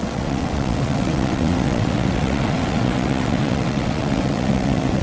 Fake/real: fake